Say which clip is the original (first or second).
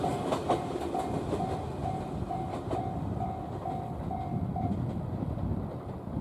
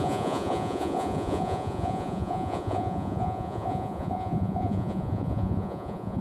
first